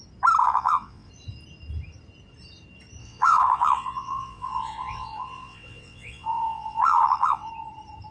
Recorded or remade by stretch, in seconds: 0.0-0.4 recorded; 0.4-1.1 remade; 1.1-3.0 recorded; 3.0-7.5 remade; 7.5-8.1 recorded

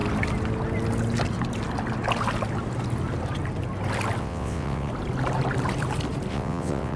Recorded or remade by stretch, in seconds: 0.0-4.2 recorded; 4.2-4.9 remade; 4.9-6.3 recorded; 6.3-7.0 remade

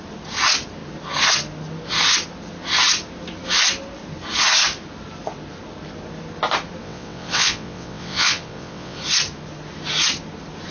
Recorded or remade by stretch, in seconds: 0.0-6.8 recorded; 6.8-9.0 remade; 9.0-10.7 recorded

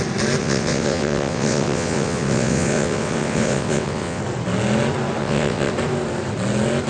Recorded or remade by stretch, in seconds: 0.0-0.4 recorded; 0.4-4.2 remade; 4.2-5.2 recorded; 5.2-5.7 remade; 5.7-6.9 recorded

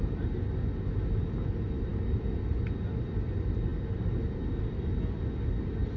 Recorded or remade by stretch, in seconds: 0.0-6.0 recorded